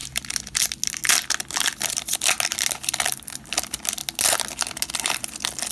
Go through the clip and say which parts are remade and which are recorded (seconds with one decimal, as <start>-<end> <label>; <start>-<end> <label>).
0.0-5.7 recorded